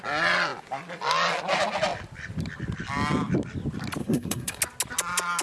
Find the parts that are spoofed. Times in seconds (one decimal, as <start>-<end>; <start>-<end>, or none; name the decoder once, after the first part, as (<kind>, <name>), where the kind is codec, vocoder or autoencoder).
4.0-4.6 (codec, SNAC)